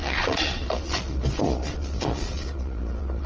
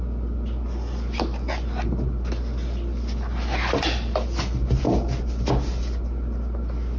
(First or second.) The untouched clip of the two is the second